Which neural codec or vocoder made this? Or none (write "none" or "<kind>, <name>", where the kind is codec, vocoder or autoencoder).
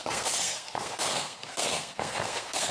codec, SNAC